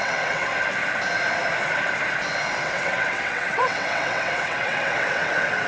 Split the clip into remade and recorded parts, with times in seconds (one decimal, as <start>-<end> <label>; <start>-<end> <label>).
0.0-0.5 remade; 0.5-2.6 recorded; 2.6-5.7 remade